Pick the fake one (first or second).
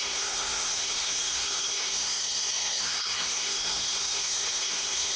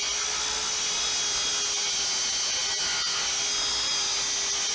first